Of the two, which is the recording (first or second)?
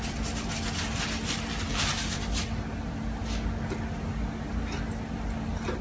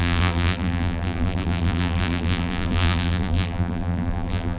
first